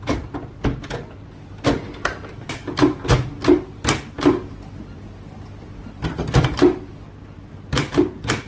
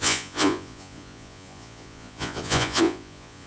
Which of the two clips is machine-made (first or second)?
second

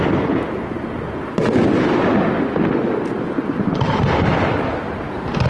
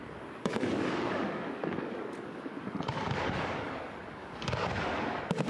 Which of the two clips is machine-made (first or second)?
second